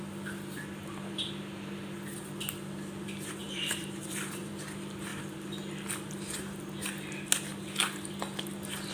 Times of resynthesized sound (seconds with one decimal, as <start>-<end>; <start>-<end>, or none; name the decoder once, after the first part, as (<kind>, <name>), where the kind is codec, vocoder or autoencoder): 3.4-4.5 (vocoder, BigVGAN v2)